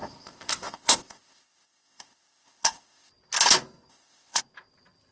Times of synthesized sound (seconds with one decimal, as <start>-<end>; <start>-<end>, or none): 0.0-3.1; 3.9-4.4